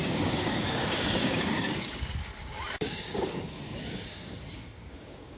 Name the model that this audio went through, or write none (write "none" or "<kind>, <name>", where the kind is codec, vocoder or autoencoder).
codec, DAC